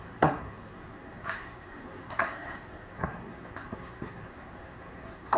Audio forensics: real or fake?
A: fake